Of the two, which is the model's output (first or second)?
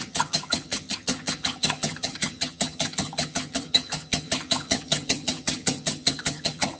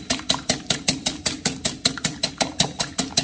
first